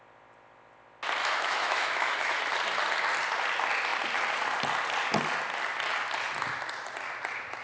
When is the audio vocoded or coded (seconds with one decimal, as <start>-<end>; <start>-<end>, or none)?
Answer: 1.2-2.4